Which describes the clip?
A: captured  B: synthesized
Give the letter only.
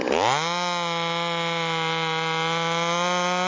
A